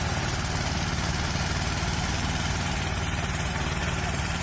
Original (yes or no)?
no